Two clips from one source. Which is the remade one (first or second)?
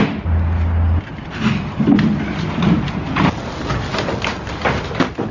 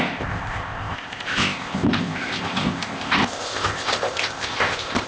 second